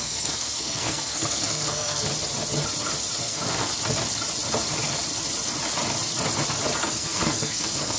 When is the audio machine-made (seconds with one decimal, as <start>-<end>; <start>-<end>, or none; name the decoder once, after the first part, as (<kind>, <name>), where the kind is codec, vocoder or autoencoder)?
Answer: 0.0-2.1 (codec, SNAC); 3.2-3.7; 6.8-8.0

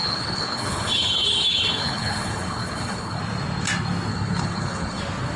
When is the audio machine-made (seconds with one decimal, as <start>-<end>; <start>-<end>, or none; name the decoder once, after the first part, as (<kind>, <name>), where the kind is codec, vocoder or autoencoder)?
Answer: 0.0-3.2 (codec, HILCodec); 4.1-5.0

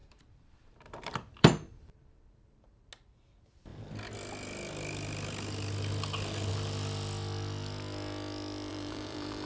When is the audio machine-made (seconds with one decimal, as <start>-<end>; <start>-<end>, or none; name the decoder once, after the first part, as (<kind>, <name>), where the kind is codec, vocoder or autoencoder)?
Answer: 0.0-2.9 (vocoder, BigVGAN v2); 8.7-9.5

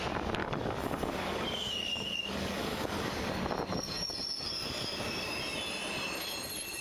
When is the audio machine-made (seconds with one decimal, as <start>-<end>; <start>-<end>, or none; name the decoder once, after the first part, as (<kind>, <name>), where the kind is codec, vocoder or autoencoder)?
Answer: 0.4-3.3 (codec, DAC)

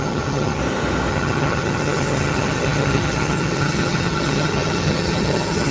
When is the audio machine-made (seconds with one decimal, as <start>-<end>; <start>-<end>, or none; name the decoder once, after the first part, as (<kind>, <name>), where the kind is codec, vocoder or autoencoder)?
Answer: 0.0-0.6 (vocoder, HiFi-GAN); 1.1-5.7

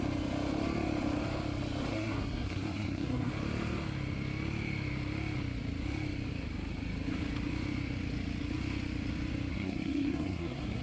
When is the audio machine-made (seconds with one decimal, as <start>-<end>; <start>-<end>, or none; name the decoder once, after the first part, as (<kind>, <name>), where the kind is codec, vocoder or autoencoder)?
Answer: 1.9-3.3 (codec, SNAC); 9.5-10.8

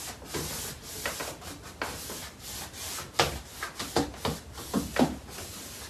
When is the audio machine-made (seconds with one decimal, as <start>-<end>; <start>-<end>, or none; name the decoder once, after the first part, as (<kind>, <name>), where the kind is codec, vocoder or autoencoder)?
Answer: none